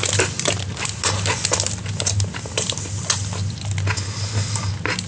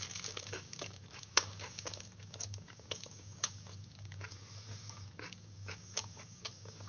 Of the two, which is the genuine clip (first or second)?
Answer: first